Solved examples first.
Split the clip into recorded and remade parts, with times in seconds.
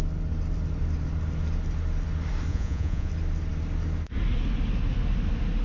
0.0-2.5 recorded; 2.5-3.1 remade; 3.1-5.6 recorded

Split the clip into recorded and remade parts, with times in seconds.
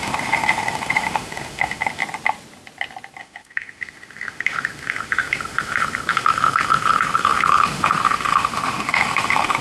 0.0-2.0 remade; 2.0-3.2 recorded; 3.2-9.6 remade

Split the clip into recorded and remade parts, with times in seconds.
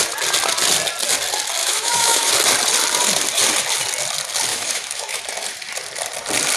0.0-1.6 recorded; 1.6-2.3 remade; 2.3-4.5 recorded; 4.5-5.2 remade; 5.2-6.6 recorded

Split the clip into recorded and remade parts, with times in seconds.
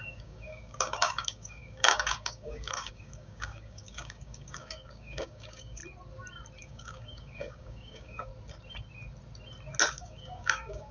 0.0-5.8 remade; 5.8-6.6 recorded; 6.6-8.3 remade; 8.3-9.9 recorded; 9.9-10.9 remade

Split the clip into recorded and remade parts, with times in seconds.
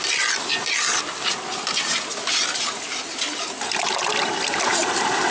0.0-5.3 recorded